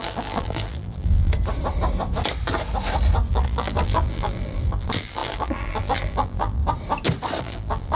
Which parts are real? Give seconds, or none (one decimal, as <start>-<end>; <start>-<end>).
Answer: 1.3-3.3; 6.6-7.4